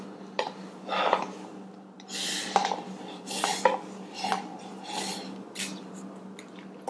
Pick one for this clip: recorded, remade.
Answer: recorded